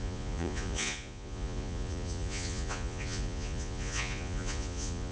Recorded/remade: remade